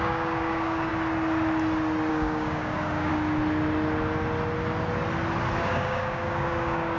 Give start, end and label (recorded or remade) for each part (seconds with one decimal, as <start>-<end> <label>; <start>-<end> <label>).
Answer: 0.0-0.9 remade; 0.9-2.1 recorded; 2.1-3.1 remade; 3.1-5.6 recorded; 5.6-7.0 remade